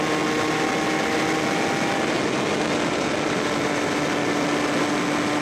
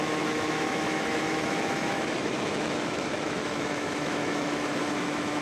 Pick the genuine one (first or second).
first